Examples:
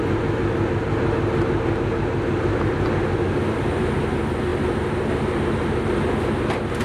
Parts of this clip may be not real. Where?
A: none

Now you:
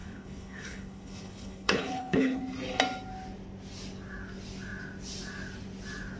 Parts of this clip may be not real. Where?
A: 0.0-2.4

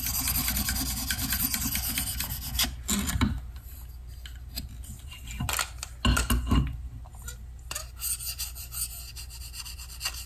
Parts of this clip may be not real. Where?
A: none

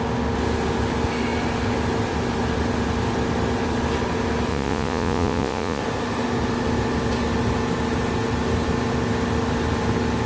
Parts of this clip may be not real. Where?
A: 4.5-5.8

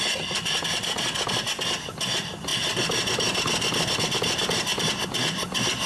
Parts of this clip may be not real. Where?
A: none